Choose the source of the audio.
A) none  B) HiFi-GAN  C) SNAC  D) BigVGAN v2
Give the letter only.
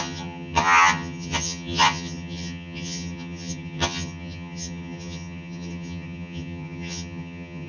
B